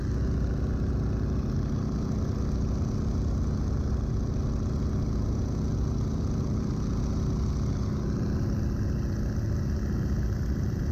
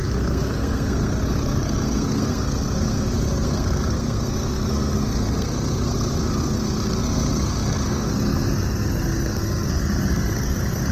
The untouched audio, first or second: first